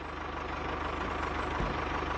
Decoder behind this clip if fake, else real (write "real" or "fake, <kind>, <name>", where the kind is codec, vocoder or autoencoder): real